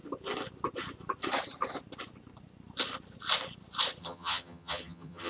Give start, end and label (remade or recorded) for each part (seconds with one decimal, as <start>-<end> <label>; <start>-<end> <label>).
0.0-4.0 recorded; 4.0-5.3 remade

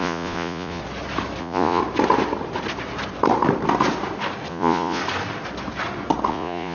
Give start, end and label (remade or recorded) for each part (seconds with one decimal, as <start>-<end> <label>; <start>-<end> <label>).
0.0-0.8 remade; 0.8-1.4 recorded; 1.4-1.8 remade; 1.8-4.5 recorded; 4.5-5.0 remade; 5.0-6.3 recorded; 6.3-6.7 remade

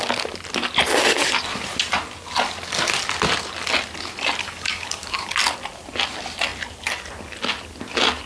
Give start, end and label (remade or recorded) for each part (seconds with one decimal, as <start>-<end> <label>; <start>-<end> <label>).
0.0-4.4 recorded; 4.4-5.3 remade; 5.3-8.3 recorded

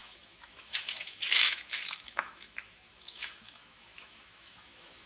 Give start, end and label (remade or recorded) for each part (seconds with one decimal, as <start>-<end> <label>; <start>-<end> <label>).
0.0-5.1 remade

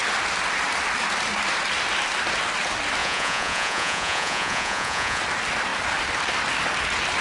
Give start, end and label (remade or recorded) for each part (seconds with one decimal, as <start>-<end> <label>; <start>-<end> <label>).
0.0-3.0 recorded; 3.0-5.2 remade; 5.2-7.2 recorded

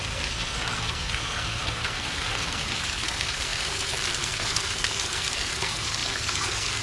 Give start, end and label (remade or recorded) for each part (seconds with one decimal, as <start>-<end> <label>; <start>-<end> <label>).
0.0-6.8 remade